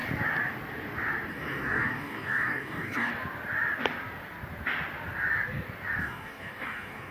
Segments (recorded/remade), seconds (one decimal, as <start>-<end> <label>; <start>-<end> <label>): 0.0-1.3 recorded; 1.3-3.1 remade; 3.1-6.0 recorded; 6.0-7.1 remade